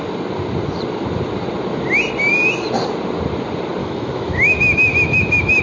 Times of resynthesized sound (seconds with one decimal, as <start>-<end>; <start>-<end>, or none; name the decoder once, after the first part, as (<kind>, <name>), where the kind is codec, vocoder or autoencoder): 3.8-5.6 (autoencoder, DAC-VAE)